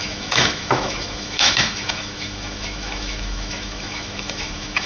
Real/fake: fake